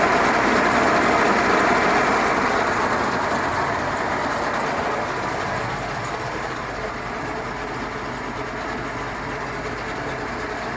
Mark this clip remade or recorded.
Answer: recorded